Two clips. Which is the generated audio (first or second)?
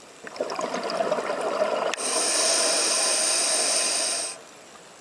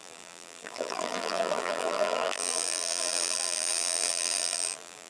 second